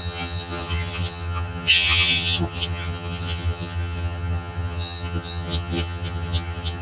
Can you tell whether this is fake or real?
fake